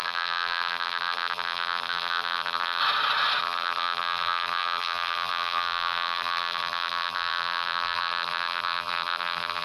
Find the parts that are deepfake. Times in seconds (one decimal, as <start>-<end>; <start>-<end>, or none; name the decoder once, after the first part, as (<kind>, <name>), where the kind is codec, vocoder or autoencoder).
0.0-2.8 (vocoder, BigVGAN v2); 3.4-9.6